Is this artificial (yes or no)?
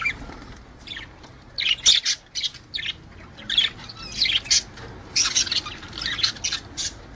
no